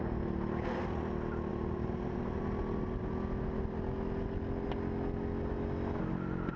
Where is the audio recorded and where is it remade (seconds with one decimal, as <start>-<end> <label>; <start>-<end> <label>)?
0.0-1.5 recorded; 1.5-2.4 remade; 2.4-6.6 recorded